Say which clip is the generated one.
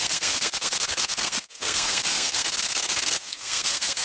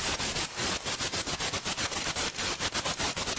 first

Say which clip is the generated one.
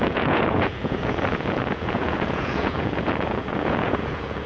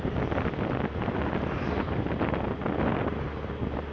first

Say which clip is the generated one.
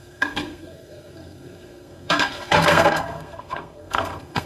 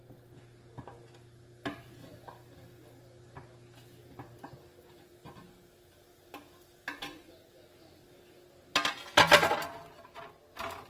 first